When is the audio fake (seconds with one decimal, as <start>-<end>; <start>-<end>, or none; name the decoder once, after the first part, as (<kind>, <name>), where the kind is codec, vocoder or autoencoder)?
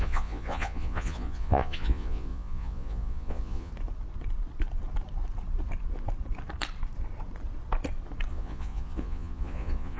0.0-3.7 (vocoder, Vocos); 8.3-10.0